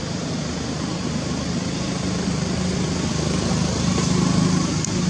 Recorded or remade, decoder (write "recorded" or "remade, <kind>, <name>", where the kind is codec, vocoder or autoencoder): recorded